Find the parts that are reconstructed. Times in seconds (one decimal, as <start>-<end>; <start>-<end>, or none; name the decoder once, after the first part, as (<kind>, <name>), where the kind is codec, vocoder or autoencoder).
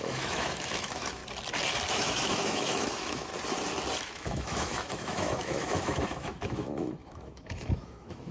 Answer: 0.0-1.2 (autoencoder, DAC-VAE); 1.9-3.3; 4.0-8.3